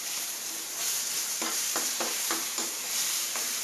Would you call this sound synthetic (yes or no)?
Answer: yes